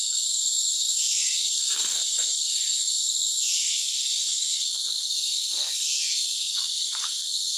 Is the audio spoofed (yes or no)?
yes